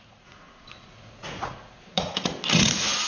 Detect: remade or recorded remade